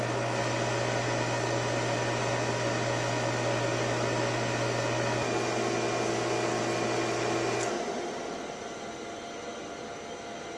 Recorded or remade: recorded